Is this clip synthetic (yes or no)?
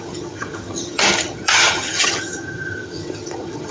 yes